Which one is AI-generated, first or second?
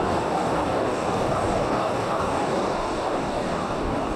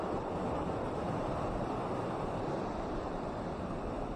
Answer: first